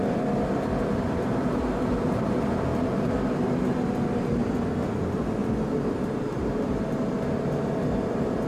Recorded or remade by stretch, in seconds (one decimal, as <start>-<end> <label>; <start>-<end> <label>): 0.0-8.5 recorded